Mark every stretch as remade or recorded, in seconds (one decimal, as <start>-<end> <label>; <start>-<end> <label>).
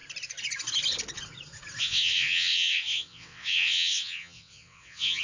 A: 0.0-1.8 recorded; 1.8-5.2 remade